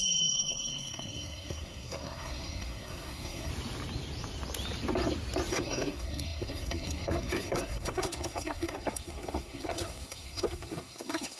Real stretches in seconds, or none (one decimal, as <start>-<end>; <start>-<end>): 3.5-5.5